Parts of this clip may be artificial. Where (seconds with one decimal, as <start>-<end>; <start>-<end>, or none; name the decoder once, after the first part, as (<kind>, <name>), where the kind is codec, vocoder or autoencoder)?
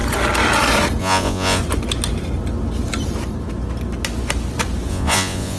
1.0-1.6 (vocoder, Vocos); 4.9-5.6